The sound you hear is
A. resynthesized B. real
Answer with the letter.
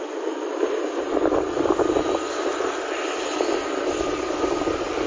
B